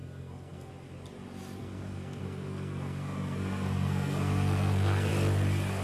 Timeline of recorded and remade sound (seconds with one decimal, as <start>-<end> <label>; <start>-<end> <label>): 0.0-0.7 remade; 0.7-1.6 recorded; 1.6-5.1 remade; 5.1-5.8 recorded

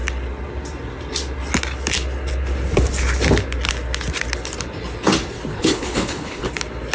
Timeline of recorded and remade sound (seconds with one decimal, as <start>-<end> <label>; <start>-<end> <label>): 0.0-5.5 recorded; 5.5-6.5 remade; 6.5-6.9 recorded

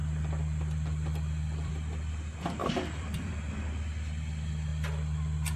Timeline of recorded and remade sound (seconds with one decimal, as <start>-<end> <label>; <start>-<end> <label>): 0.0-1.7 remade; 1.7-2.6 recorded; 2.6-3.3 remade; 3.3-5.6 recorded

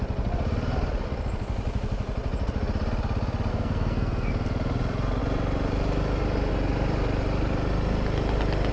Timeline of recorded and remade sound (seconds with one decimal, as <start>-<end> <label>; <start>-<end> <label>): 0.0-3.5 recorded; 3.5-4.3 remade; 4.3-8.7 recorded

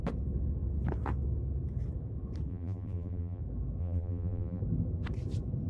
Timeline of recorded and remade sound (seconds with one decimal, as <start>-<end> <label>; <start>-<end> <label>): 0.0-2.5 recorded; 2.5-3.4 remade; 3.4-3.8 recorded; 3.8-4.6 remade; 4.6-5.7 recorded